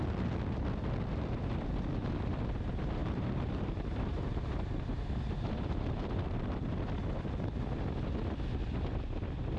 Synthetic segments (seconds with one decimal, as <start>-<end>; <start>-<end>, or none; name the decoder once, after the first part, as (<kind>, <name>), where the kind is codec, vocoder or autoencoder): 3.0-6.7 (vocoder, BigVGAN v2)